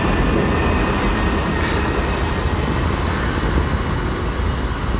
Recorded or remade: recorded